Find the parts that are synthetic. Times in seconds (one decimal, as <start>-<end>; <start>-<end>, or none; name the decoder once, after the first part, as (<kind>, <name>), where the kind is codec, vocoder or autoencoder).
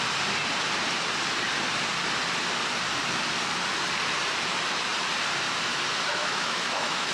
6.2-7.1 (autoencoder, DAC-VAE)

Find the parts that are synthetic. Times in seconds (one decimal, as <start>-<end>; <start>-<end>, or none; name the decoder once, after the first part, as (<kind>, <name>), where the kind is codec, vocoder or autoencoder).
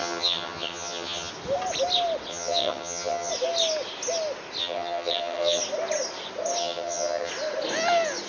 0.0-1.3 (vocoder, HiFi-GAN); 2.3-3.3; 4.6-5.6; 6.6-7.3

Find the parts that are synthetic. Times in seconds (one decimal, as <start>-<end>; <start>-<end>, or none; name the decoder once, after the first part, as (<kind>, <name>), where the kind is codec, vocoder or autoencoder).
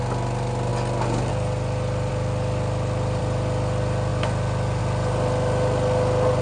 none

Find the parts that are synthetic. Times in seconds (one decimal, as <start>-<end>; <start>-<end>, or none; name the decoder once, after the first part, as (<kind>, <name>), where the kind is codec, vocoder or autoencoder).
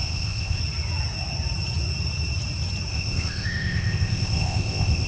0.0-0.6 (codec, ZipCodec); 2.9-5.1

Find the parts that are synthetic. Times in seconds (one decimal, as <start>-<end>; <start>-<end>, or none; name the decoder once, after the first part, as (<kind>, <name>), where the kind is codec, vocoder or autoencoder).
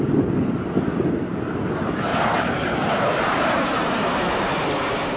2.1-4.5 (vocoder, BigVGAN v2)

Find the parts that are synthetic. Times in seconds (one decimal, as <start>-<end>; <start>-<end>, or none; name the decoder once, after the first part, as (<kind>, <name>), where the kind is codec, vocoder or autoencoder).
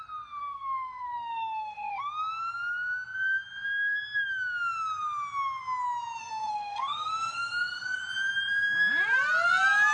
0.4-2.0 (codec, SNAC); 6.2-8.0